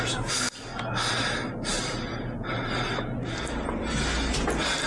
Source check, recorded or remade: recorded